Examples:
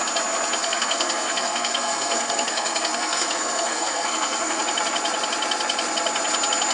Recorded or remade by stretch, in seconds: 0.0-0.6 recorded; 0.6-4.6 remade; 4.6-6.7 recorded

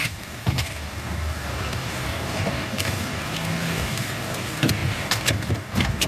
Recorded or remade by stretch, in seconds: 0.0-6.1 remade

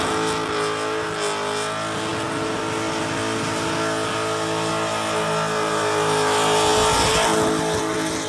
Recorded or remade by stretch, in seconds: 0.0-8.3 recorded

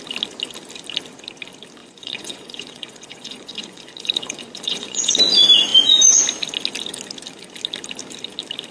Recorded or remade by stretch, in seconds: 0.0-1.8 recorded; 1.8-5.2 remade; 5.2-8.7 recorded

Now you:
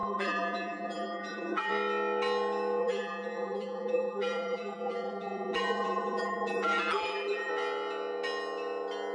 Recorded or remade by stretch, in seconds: 0.0-1.7 remade; 1.7-2.8 recorded; 2.8-7.5 remade; 7.5-9.1 recorded